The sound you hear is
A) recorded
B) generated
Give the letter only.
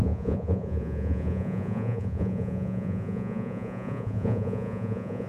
B